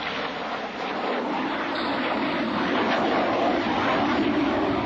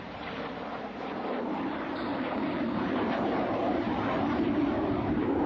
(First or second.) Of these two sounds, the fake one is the second